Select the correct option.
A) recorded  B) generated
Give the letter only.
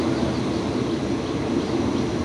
A